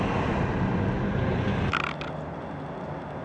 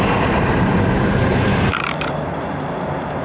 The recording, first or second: first